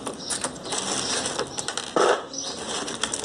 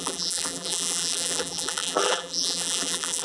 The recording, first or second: first